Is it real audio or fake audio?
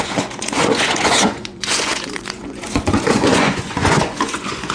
fake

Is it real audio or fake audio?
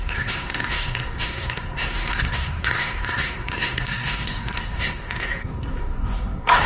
fake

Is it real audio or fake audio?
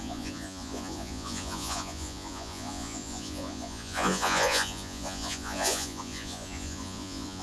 fake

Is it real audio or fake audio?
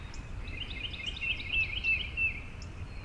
real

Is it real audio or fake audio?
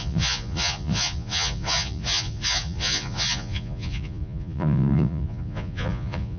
fake